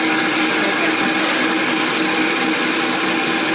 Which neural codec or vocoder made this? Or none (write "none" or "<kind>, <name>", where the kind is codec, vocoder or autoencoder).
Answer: none